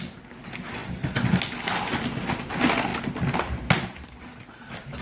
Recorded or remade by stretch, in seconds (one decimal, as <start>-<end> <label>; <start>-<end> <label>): 0.0-5.0 recorded